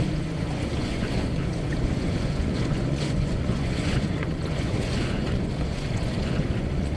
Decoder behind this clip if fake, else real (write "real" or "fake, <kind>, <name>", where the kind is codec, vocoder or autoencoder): fake, vocoder, Vocos